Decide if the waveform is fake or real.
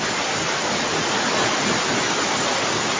real